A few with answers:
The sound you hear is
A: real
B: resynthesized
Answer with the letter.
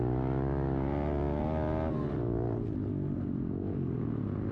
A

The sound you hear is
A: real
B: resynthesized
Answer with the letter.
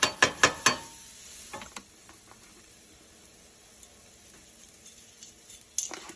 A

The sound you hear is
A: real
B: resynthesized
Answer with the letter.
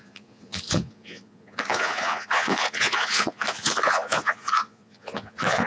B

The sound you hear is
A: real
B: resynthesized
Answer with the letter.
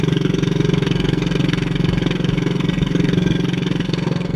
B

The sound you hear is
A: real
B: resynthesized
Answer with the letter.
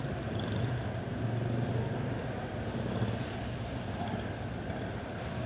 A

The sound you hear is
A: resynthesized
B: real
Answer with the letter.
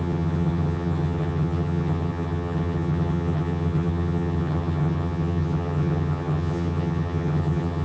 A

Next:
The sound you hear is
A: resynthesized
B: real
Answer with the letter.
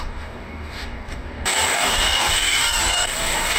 A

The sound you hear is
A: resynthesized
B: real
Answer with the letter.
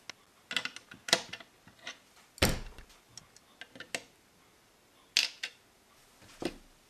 B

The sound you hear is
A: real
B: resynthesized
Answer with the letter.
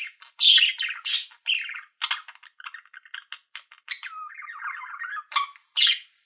A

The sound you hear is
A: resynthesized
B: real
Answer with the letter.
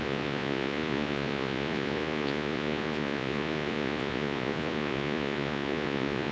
A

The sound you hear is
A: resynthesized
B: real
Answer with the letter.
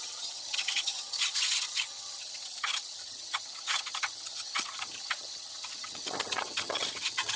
A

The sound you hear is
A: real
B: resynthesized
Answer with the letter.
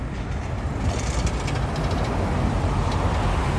A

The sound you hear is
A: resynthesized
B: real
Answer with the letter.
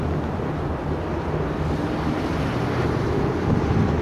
B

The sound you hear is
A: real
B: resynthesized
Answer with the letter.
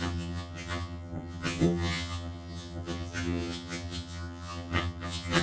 B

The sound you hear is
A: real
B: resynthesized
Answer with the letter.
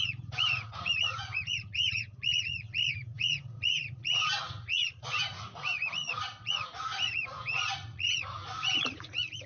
B